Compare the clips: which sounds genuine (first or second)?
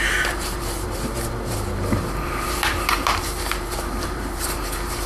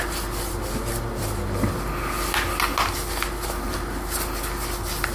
second